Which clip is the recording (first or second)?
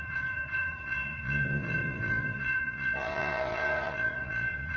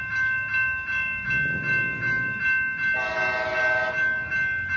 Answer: second